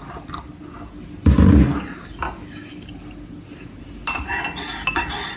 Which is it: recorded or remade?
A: recorded